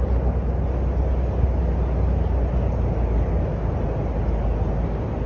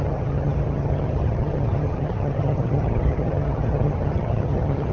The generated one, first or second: second